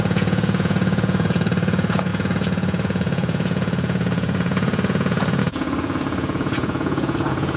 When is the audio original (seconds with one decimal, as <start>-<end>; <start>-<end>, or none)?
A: none